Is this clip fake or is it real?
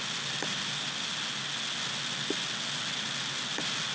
real